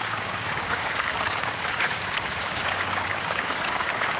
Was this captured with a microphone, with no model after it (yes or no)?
no